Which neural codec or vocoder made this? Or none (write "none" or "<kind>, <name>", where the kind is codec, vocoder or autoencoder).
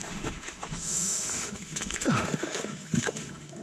autoencoder, DAC-VAE